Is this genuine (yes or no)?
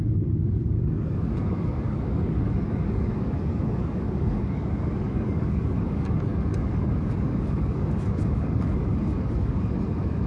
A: no